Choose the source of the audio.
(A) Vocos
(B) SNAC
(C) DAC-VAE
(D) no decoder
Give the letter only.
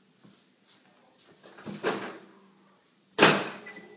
D